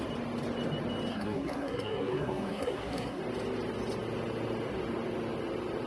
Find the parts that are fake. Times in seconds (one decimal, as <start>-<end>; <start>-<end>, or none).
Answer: 1.1-3.2

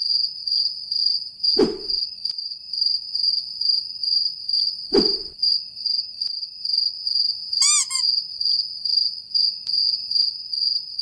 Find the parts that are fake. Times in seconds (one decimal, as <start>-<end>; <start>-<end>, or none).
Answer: 1.0-5.6

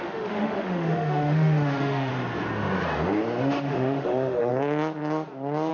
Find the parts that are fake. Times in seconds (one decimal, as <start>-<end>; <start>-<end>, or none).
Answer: 0.0-2.1; 3.4-4.5

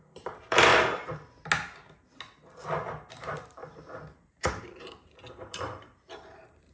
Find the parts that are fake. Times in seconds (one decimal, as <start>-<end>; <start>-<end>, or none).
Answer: 0.0-0.7; 3.1-3.6; 4.6-6.7

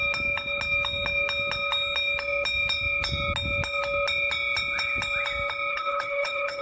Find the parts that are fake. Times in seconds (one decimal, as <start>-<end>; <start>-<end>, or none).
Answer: 5.7-6.6

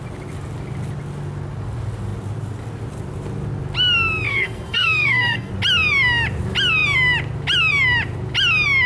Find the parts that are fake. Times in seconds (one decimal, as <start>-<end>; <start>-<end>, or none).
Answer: 4.3-5.5